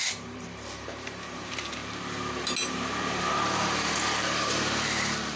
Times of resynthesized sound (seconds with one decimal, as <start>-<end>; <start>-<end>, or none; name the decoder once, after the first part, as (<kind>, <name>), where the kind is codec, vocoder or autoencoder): 0.0-1.8 (vocoder, BigVGAN v2); 3.2-5.4